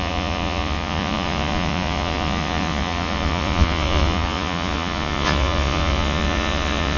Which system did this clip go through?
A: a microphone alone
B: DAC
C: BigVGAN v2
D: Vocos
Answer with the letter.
D